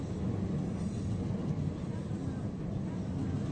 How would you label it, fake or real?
real